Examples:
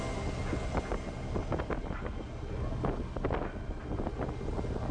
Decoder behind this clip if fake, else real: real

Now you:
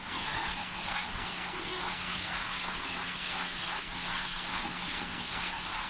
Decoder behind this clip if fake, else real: fake, codec, SNAC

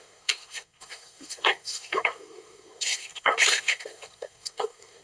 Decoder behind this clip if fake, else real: fake, codec, SNAC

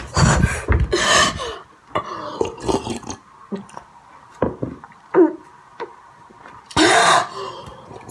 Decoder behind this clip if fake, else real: real